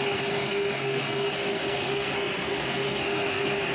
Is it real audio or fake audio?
fake